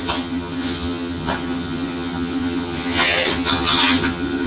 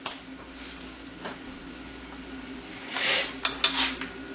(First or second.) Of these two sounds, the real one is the second